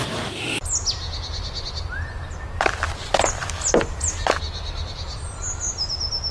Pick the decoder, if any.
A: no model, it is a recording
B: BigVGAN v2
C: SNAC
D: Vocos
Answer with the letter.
A